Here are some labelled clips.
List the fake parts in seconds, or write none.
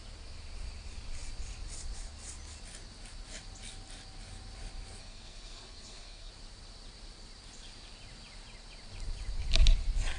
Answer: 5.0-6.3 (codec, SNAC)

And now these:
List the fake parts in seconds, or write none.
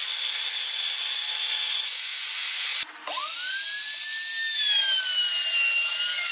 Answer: 1.4-2.7 (vocoder, Vocos)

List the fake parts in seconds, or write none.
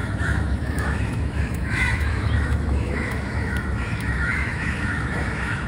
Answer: 0.0-5.7 (autoencoder, DAC-VAE)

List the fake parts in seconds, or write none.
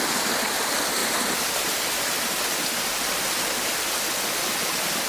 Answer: none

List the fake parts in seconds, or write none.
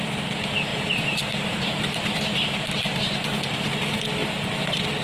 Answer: 0.7-3.7 (vocoder, BigVGAN v2)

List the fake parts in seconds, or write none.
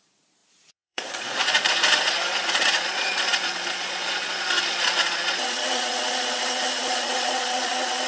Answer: 0.0-8.1 (vocoder, Vocos)